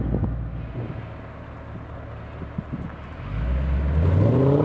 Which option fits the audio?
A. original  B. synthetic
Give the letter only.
A